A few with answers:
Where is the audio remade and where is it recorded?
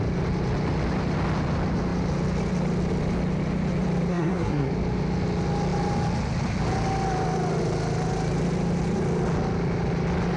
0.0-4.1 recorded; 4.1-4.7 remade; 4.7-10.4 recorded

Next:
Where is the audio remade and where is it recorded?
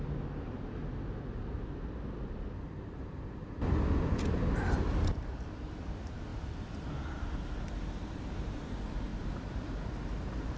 0.0-10.6 recorded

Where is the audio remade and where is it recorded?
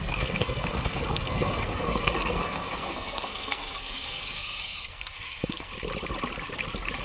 0.0-5.7 remade; 5.7-7.0 recorded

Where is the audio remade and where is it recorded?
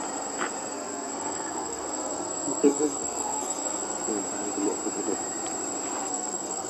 0.0-0.7 recorded; 0.7-4.1 remade; 4.1-6.0 recorded; 6.0-6.7 remade